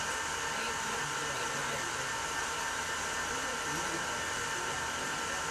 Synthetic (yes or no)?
no